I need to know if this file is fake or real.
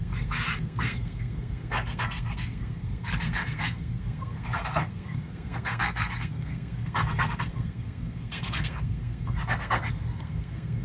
fake